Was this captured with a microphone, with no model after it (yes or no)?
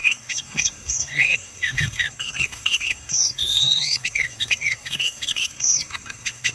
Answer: no